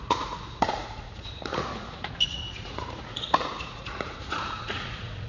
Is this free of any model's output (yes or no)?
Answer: no